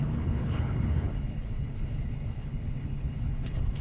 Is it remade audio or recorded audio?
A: remade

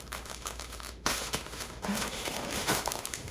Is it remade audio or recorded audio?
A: remade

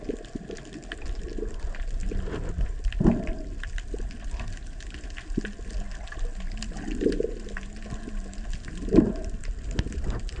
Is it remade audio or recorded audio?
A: recorded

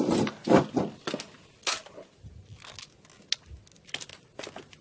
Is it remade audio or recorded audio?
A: recorded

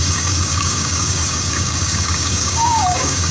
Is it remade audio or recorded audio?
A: remade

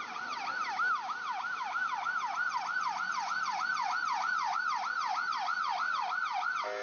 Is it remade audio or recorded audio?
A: recorded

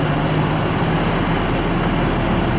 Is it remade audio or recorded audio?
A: recorded